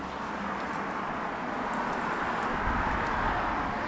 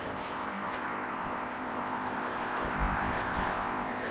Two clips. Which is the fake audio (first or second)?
second